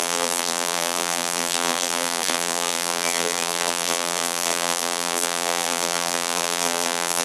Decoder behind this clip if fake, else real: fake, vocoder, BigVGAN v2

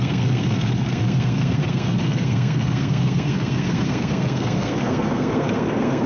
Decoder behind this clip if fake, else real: fake, codec, SNAC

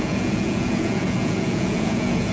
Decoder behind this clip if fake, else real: fake, vocoder, Vocos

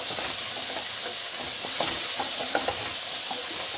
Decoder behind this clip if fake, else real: real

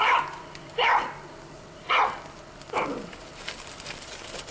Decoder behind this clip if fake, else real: fake, vocoder, BigVGAN v2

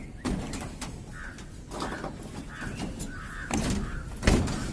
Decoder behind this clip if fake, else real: real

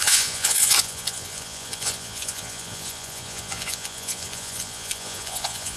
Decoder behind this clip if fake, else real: fake, vocoder, Vocos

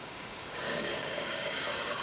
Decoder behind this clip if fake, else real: fake, codec, DAC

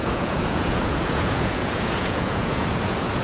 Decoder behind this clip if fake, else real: fake, vocoder, Vocos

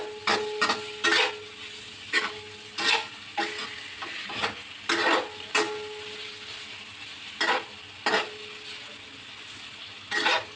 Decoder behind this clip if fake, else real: real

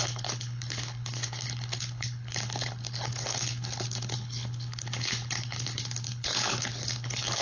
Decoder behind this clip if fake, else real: fake, codec, HILCodec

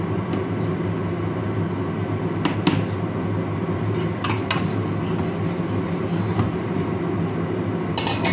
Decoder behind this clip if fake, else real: real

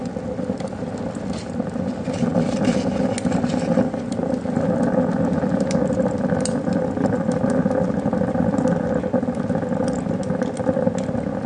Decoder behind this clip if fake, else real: real